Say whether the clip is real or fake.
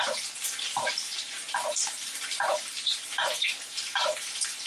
fake